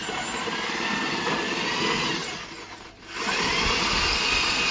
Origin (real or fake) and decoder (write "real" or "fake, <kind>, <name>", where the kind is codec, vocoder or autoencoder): real